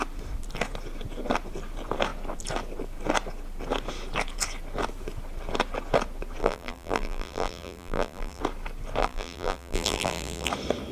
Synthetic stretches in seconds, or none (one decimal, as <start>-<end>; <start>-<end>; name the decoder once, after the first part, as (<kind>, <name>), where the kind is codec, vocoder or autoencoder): 6.4-8.4 (vocoder, BigVGAN v2); 9.0-10.5